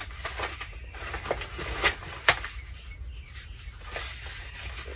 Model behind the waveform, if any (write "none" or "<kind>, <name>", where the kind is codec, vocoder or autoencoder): none